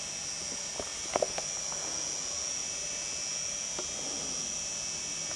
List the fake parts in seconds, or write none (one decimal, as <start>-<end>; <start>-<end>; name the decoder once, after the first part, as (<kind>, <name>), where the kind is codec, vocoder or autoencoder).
none